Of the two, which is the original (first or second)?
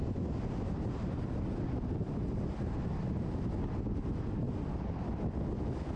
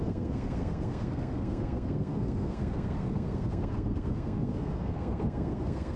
first